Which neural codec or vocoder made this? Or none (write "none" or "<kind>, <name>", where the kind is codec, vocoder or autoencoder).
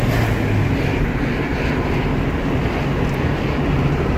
none